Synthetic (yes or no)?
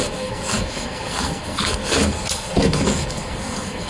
yes